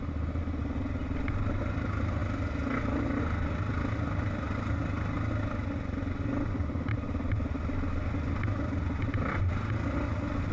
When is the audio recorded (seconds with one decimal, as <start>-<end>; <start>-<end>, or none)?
0.0-10.5